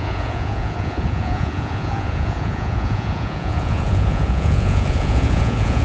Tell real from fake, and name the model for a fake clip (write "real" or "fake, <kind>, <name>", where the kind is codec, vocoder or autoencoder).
fake, vocoder, Vocos